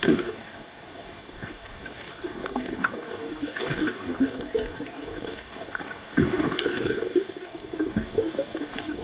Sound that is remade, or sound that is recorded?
remade